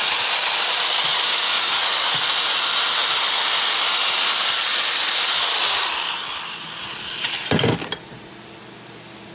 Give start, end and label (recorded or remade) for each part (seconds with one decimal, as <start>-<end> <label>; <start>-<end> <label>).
0.0-9.3 recorded